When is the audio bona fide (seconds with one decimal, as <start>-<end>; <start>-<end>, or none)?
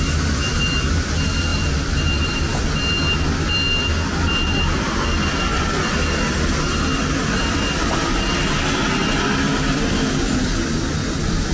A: 0.0-11.5